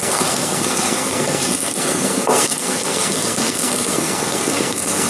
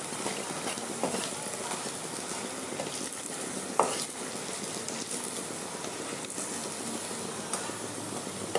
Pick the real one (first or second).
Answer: second